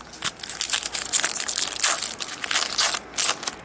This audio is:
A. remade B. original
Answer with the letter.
B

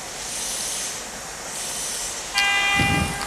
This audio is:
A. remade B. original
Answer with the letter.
B